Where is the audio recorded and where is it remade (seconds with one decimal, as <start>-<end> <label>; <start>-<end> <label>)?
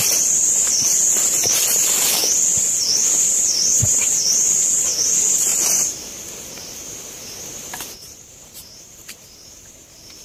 0.0-2.2 remade; 2.2-3.3 recorded; 3.3-10.2 remade